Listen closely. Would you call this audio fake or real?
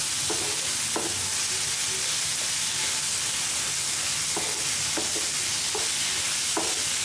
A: real